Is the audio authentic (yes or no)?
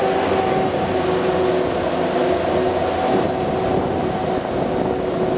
yes